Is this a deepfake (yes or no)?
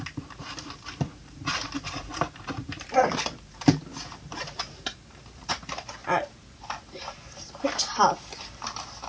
yes